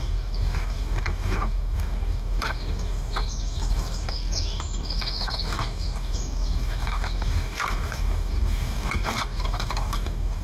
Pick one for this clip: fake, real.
fake